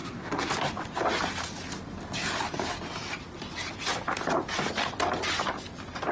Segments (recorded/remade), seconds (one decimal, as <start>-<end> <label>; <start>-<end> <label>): 0.0-0.5 remade; 0.5-6.1 recorded